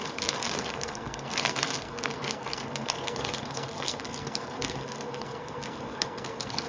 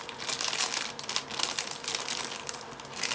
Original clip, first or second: second